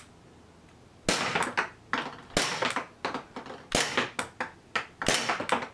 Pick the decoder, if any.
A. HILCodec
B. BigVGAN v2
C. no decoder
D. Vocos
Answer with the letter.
C